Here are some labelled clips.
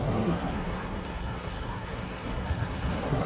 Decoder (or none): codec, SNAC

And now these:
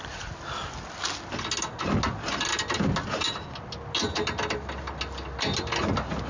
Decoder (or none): none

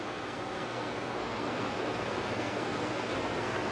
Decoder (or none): codec, SNAC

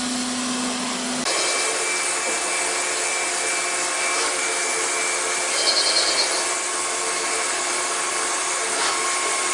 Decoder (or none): none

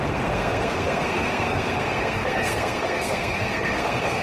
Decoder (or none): codec, SNAC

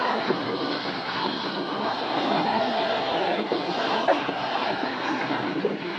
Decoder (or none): codec, SNAC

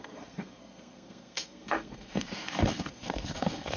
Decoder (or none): codec, SNAC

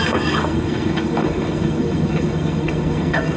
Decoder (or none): codec, SNAC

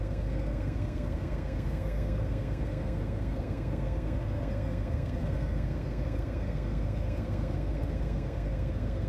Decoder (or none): codec, SNAC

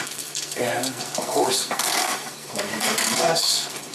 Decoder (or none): codec, SNAC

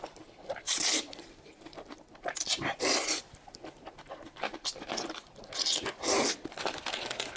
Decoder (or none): none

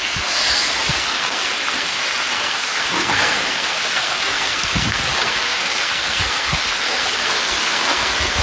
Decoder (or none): codec, SNAC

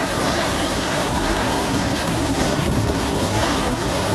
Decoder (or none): codec, SNAC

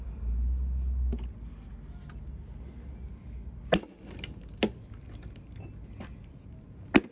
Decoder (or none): none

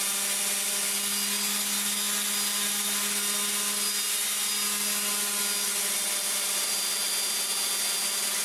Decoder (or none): none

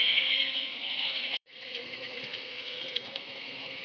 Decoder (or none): codec, SNAC